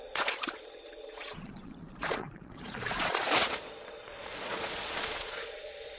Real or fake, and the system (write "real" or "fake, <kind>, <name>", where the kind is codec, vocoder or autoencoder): fake, vocoder, Vocos